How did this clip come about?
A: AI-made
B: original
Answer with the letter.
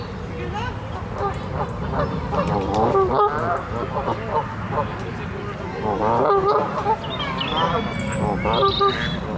B